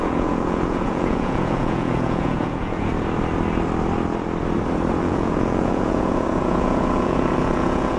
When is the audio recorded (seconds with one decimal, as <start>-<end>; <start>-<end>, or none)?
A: 2.9-5.0